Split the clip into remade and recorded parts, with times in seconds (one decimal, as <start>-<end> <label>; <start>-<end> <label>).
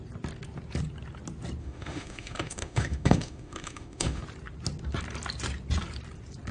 0.0-1.6 recorded; 1.6-4.2 remade; 4.2-6.5 recorded